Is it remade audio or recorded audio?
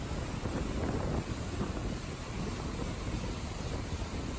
recorded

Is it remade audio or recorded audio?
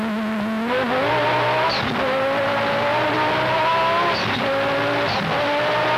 recorded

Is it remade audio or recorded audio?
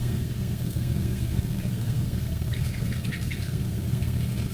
remade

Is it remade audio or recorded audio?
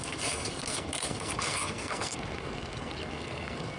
remade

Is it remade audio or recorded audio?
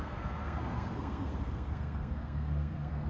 remade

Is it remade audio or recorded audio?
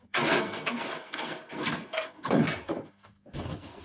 remade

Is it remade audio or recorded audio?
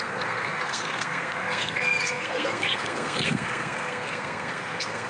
remade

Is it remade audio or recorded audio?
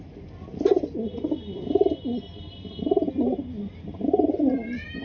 recorded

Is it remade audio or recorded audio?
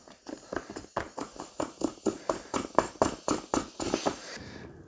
recorded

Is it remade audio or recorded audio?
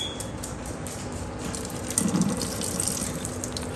recorded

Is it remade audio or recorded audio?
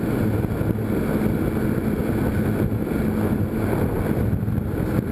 recorded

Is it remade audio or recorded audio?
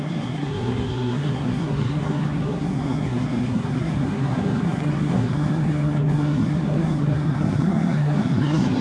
remade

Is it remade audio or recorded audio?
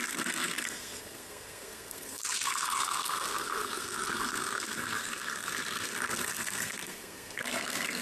remade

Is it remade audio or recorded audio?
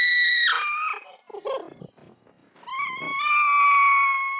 recorded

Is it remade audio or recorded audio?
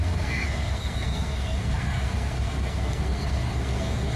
remade